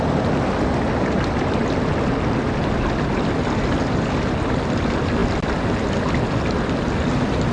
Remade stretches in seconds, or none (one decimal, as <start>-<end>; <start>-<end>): none